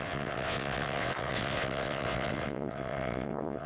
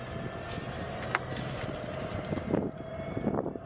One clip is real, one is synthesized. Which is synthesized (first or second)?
first